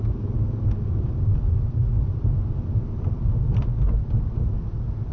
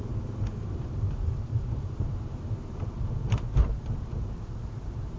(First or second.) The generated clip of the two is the second